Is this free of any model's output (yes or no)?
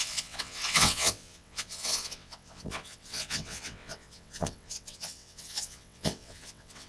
no